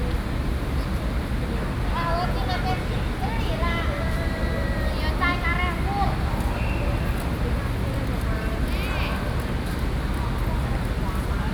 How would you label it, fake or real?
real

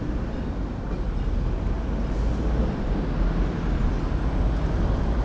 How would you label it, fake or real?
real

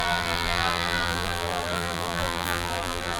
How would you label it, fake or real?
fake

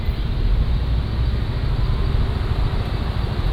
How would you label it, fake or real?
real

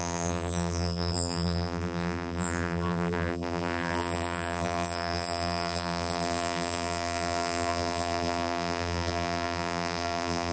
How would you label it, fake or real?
fake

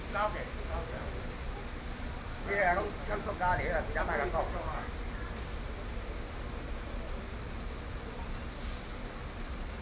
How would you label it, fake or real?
fake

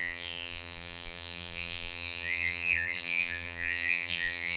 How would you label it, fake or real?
fake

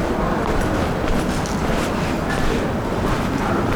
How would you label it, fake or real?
fake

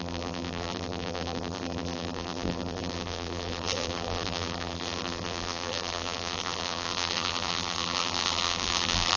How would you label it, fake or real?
fake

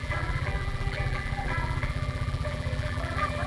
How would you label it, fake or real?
fake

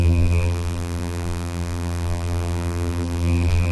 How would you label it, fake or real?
fake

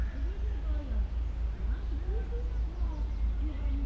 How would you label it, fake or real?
real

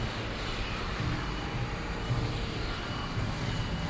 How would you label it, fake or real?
fake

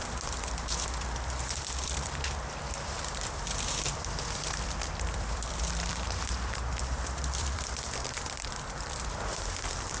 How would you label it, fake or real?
fake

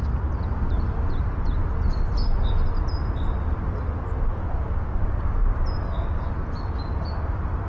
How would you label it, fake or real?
real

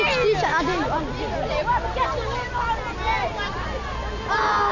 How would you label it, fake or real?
real